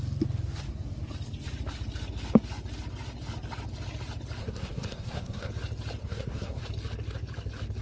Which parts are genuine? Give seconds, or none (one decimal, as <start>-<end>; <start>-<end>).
0.0-4.4; 5.5-6.0; 6.6-7.8